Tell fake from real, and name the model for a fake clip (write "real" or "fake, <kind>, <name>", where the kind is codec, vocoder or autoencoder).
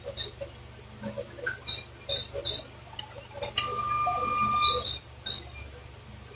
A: real